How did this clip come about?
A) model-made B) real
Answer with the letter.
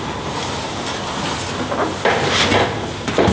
B